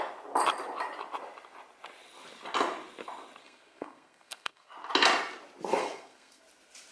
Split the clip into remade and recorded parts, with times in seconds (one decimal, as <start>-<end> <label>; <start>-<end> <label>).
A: 0.0-3.4 recorded; 3.4-4.7 remade; 4.7-5.8 recorded; 5.8-6.4 remade; 6.4-6.9 recorded